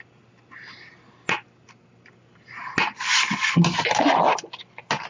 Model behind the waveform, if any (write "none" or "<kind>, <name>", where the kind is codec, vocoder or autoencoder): none